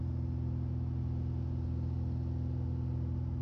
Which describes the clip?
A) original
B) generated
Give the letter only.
A